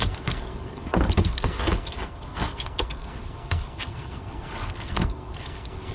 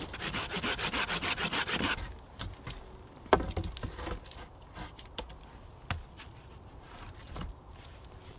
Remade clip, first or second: first